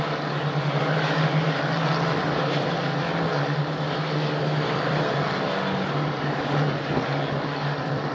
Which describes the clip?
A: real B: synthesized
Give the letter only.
A